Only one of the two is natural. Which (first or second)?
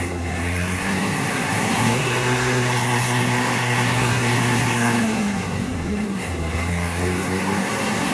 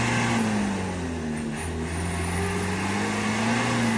second